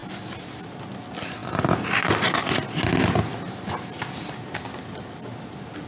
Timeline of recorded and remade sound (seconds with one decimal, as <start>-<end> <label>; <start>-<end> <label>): 0.0-5.9 recorded